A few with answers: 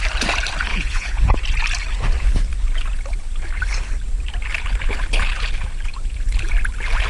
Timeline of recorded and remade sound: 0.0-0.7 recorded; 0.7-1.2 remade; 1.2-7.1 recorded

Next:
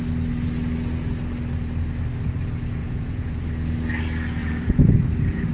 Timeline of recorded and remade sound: 0.0-2.8 recorded; 2.8-3.3 remade; 3.3-4.4 recorded; 4.4-5.5 remade

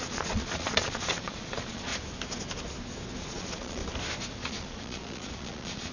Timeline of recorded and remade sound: 0.0-1.9 remade; 1.9-3.2 recorded; 3.2-3.8 remade; 3.8-4.4 recorded; 4.4-5.9 remade

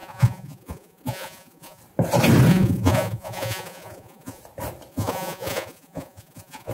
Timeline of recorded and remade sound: 0.0-1.8 remade; 1.8-2.5 recorded; 2.5-4.4 remade; 4.4-4.9 recorded; 4.9-6.7 remade

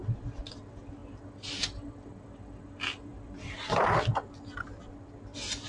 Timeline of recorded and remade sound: 0.0-5.7 recorded

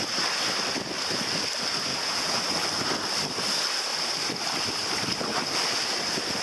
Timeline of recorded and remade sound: 0.0-1.9 recorded; 1.9-2.4 remade; 2.4-6.4 recorded

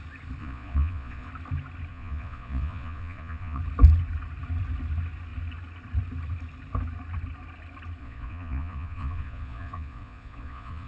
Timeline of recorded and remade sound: 0.0-0.4 recorded; 0.4-1.3 remade; 1.3-1.9 recorded; 1.9-3.6 remade; 3.6-8.0 recorded; 8.0-10.9 remade

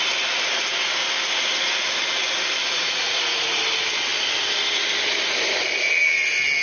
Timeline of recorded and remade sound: 0.0-2.6 recorded; 2.6-3.6 remade; 3.6-6.6 recorded